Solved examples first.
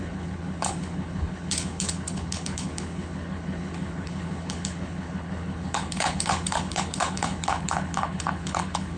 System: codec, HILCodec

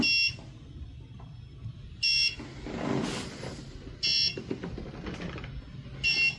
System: none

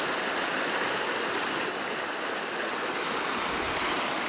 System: none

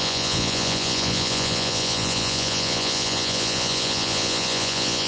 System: vocoder, Vocos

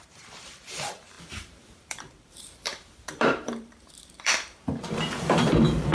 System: vocoder, BigVGAN v2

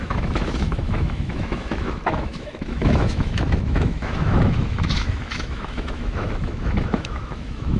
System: autoencoder, DAC-VAE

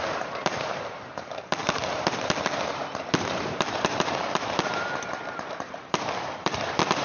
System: vocoder, BigVGAN v2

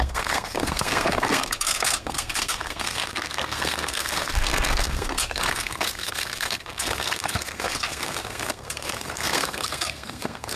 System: codec, SNAC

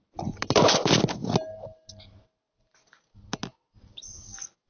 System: none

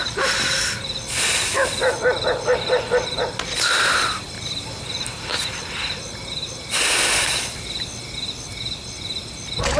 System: none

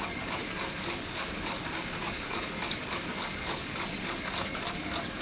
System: codec, DAC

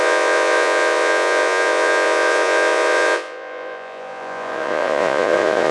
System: vocoder, Vocos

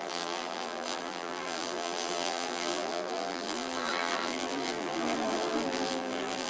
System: vocoder, BigVGAN v2